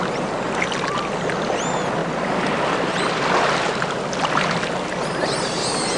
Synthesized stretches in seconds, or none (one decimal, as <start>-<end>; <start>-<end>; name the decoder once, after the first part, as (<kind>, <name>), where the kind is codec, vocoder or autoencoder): none